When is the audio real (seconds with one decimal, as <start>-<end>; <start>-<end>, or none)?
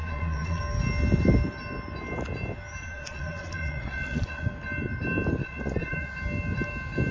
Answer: 0.6-2.8; 4.5-5.4; 6.1-7.1